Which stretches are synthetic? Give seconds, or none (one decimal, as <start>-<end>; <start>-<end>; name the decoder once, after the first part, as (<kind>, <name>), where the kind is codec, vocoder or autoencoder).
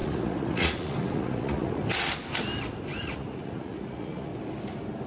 0.0-1.8 (vocoder, Vocos); 3.0-4.3